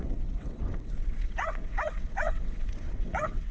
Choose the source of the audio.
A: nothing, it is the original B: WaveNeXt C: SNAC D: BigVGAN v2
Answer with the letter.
B